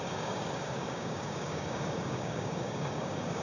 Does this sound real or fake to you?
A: fake